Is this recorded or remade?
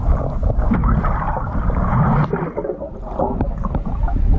recorded